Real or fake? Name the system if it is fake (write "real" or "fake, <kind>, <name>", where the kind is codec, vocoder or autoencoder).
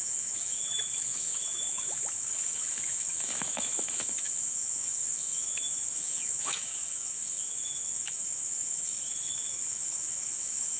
fake, autoencoder, DAC-VAE